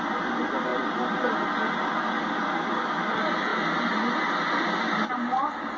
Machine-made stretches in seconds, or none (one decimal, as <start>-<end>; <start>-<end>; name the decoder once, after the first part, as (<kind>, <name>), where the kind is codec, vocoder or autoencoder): none